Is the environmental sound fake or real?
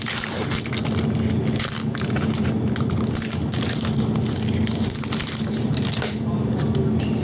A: real